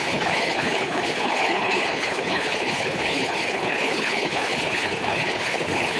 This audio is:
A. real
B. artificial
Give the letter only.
B